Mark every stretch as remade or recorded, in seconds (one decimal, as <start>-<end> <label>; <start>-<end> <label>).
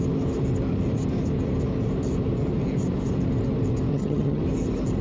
0.0-3.9 recorded; 3.9-4.4 remade; 4.4-5.0 recorded